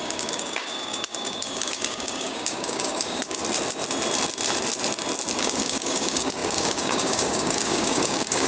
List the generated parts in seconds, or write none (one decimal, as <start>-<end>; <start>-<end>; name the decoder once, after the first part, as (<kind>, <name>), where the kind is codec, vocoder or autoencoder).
0.0-3.4 (codec, DAC); 5.4-8.5